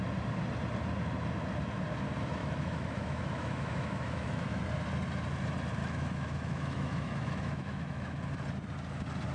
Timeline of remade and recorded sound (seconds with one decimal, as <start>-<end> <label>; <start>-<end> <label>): 0.0-2.4 recorded; 2.4-4.6 remade; 4.6-5.8 recorded; 5.8-8.2 remade; 8.2-9.3 recorded